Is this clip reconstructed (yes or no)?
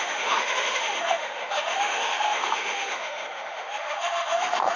yes